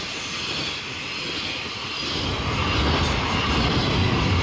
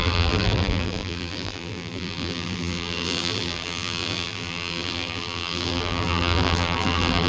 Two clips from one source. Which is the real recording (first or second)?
first